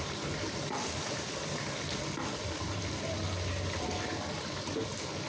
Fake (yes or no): no